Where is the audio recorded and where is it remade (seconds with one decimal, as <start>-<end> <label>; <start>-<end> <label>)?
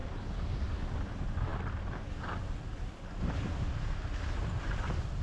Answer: 0.0-5.2 recorded